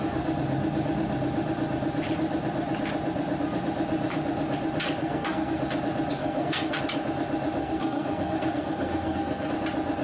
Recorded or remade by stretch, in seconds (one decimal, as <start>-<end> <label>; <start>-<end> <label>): 0.0-5.0 recorded; 5.0-5.6 remade; 5.6-6.2 recorded; 6.2-6.8 remade; 6.8-7.6 recorded; 7.6-9.5 remade; 9.5-10.0 recorded